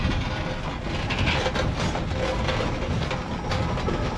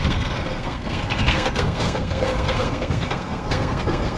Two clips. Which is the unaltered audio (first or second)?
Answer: first